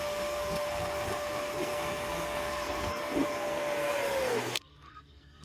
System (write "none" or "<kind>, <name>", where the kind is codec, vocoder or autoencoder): codec, SNAC